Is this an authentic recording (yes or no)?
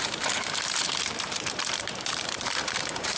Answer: no